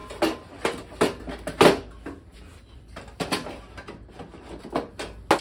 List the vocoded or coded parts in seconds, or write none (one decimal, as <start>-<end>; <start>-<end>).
2.7-3.6